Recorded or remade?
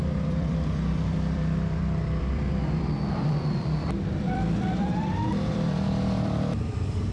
remade